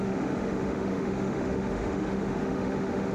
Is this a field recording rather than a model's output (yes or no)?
no